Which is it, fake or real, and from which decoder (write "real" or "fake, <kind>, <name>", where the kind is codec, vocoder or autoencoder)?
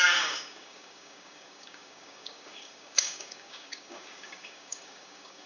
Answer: fake, codec, DAC